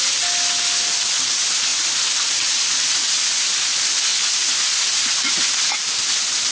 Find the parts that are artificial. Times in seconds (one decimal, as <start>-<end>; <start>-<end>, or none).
none